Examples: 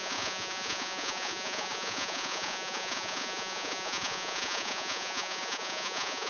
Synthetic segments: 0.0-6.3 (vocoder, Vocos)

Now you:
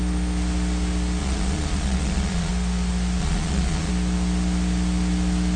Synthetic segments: 1.2-2.5 (vocoder, Vocos); 3.2-3.9